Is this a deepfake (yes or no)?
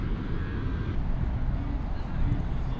no